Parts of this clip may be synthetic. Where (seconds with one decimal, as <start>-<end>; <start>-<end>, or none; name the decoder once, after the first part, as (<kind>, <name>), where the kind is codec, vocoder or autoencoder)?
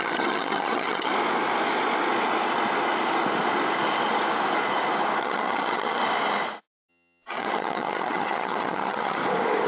0.0-1.1 (vocoder, HiFi-GAN); 5.2-6.0; 6.9-9.2